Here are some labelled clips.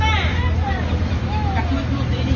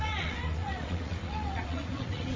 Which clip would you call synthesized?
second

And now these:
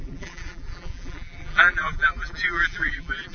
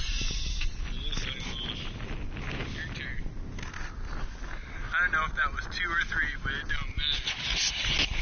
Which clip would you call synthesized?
first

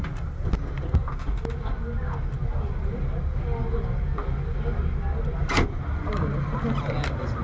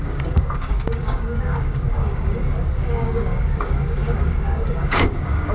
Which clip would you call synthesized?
second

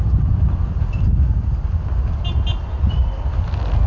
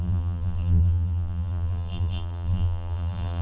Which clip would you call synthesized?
second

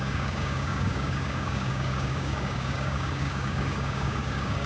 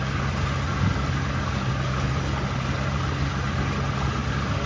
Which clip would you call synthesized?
first